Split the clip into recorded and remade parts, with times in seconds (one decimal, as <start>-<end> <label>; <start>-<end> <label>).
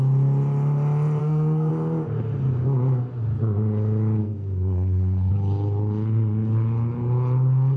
0.0-1.2 recorded; 1.2-1.7 remade; 1.7-4.2 recorded; 4.2-5.3 remade; 5.3-7.8 recorded